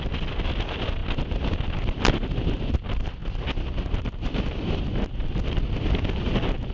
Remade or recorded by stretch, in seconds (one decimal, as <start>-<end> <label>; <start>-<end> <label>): 0.0-6.7 recorded